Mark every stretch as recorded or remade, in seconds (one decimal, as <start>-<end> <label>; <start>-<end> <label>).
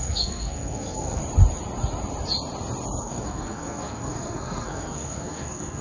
0.0-1.2 remade; 1.2-3.0 recorded; 3.0-5.8 remade